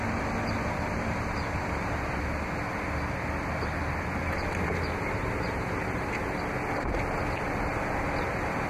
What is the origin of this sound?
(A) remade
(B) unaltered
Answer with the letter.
B